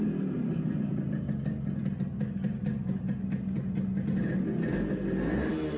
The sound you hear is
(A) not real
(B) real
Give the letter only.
B